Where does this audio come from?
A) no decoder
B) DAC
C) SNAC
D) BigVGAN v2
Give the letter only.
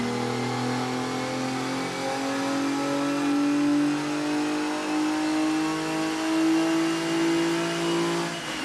A